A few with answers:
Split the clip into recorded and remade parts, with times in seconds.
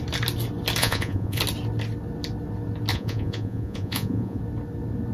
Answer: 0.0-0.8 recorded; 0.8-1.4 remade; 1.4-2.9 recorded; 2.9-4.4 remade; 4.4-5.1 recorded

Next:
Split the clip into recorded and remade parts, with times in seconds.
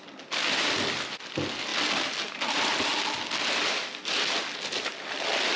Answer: 0.0-5.6 recorded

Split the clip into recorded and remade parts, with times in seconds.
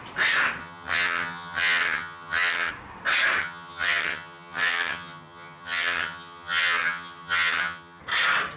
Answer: 0.0-0.6 recorded; 0.6-2.7 remade; 2.7-3.4 recorded; 3.4-8.0 remade; 8.0-8.6 recorded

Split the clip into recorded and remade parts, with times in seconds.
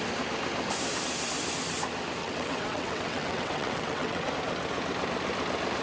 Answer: 0.0-2.2 recorded; 2.2-4.3 remade; 4.3-5.8 recorded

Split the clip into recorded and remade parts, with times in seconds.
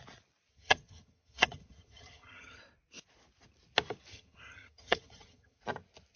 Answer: 0.0-0.5 recorded; 0.5-2.6 remade; 2.6-4.1 recorded; 4.1-5.6 remade; 5.6-6.2 recorded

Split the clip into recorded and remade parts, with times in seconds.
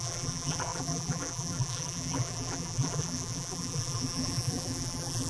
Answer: 0.0-5.3 remade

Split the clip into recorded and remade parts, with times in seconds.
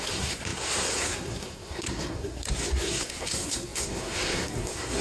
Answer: 0.0-5.0 remade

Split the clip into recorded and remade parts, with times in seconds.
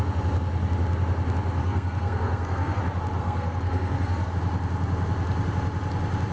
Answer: 0.0-1.6 recorded; 1.6-2.8 remade; 2.8-3.2 recorded; 3.2-4.3 remade; 4.3-6.3 recorded